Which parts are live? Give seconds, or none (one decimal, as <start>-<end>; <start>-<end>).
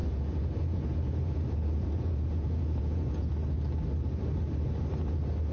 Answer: 3.3-5.5